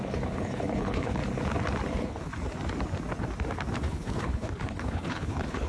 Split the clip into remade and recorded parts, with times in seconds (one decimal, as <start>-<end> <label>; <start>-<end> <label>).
0.0-1.2 remade; 1.2-1.9 recorded; 1.9-2.3 remade; 2.3-3.8 recorded; 3.8-5.7 remade